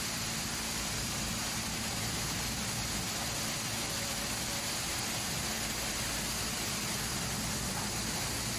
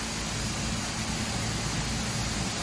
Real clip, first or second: second